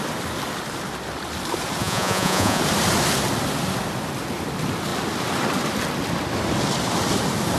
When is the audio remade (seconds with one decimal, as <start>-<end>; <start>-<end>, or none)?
1.8-2.6